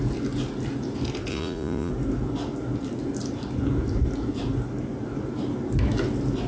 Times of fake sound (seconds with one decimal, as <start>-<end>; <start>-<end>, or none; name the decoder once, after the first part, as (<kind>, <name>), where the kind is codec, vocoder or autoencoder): 1.3-1.9 (vocoder, Vocos)